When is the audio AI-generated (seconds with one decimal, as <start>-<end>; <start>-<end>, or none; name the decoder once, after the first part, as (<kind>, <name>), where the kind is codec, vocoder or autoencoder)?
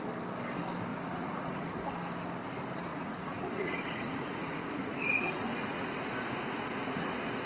0.9-1.7 (vocoder, Vocos); 2.9-7.5